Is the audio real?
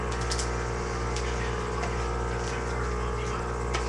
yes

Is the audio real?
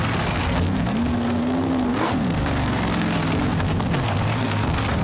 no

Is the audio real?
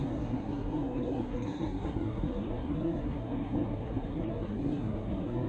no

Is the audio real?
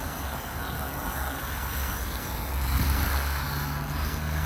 no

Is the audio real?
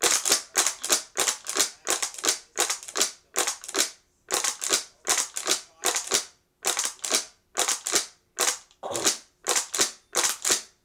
yes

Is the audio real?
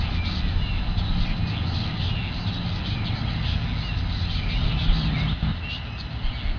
yes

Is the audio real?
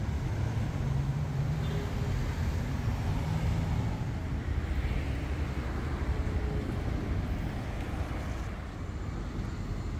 yes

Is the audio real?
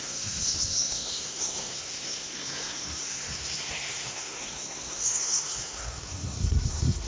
no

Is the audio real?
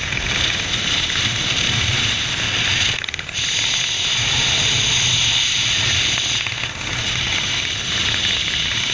yes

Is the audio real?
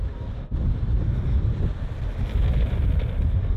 yes